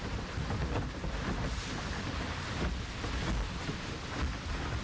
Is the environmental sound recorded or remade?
recorded